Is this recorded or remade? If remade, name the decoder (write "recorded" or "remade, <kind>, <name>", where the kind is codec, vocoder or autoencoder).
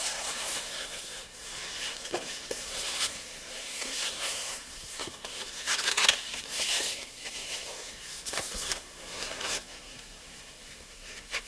remade, codec, SNAC